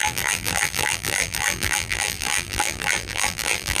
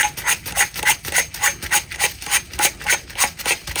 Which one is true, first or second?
second